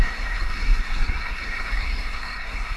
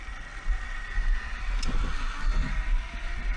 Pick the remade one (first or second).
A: first